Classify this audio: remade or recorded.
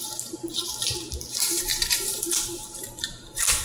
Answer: remade